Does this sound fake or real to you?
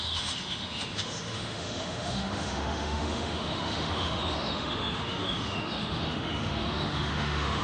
fake